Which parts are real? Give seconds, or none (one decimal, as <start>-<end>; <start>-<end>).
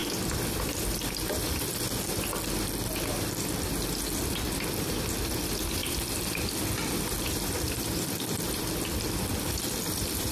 3.7-5.8